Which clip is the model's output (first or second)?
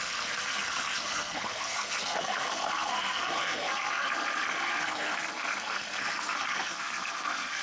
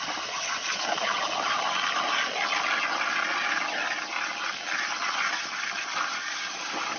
first